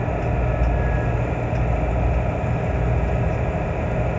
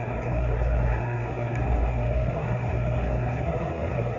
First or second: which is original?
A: first